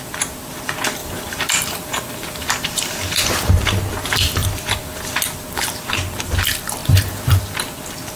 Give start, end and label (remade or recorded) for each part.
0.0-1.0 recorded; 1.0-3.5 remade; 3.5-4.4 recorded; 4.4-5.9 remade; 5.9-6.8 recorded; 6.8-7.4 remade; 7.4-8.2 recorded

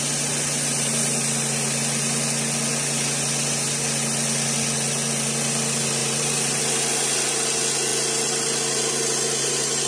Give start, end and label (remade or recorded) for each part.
0.0-6.0 recorded; 6.0-6.6 remade; 6.6-9.9 recorded

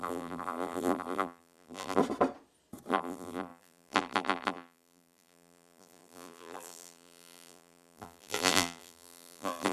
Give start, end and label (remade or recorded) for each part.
0.0-2.0 remade; 2.0-2.9 recorded; 2.9-9.7 remade

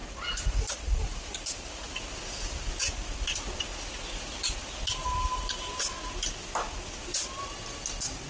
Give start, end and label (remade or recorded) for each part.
0.0-5.0 recorded; 5.0-5.8 remade; 5.8-8.3 recorded

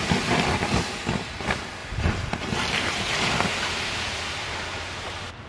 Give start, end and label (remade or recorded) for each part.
0.0-1.8 recorded; 1.8-3.3 remade; 3.3-5.5 recorded

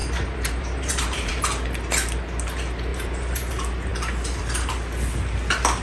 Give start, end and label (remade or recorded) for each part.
0.0-1.3 remade; 1.3-2.9 recorded; 2.9-3.5 remade; 3.5-5.8 recorded